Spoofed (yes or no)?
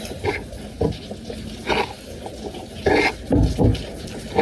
no